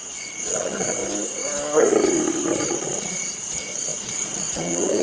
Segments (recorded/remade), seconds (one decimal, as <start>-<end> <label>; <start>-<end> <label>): 0.0-1.0 remade; 1.0-2.6 recorded; 2.6-5.0 remade